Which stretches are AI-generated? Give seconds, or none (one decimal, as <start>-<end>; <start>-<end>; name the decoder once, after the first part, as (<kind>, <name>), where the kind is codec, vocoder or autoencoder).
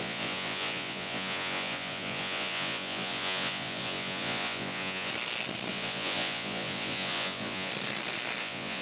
0.0-5.1 (vocoder, Vocos); 5.7-7.7; 8.4-8.8